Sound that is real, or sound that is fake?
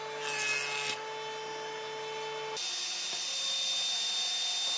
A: real